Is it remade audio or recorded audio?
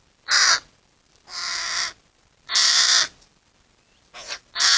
recorded